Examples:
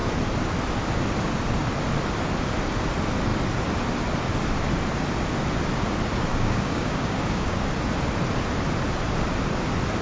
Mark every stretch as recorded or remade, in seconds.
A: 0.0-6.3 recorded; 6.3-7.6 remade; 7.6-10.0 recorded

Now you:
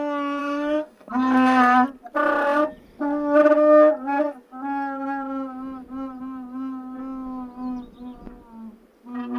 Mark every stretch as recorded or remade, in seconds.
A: 0.0-0.4 recorded; 0.4-1.1 remade; 1.1-9.4 recorded

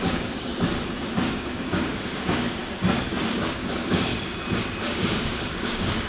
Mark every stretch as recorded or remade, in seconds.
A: 0.0-0.5 remade; 0.5-1.3 recorded; 1.3-2.6 remade; 2.6-3.3 recorded; 3.3-4.1 remade; 4.1-4.8 recorded; 4.8-6.1 remade

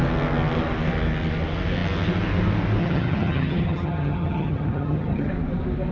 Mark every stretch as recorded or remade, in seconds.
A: 0.0-2.8 recorded; 2.8-5.3 remade; 5.3-5.9 recorded

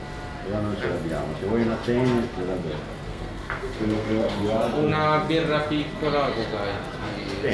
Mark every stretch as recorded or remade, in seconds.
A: 0.0-3.1 recorded; 3.1-4.4 remade; 4.4-7.5 recorded

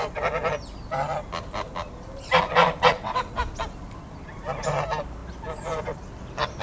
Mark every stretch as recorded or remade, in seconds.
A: 0.0-2.9 recorded; 2.9-3.4 remade; 3.4-6.6 recorded